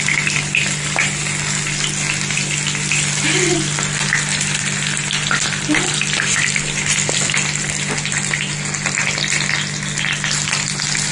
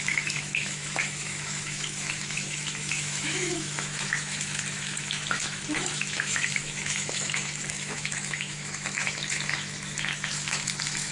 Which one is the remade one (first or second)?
second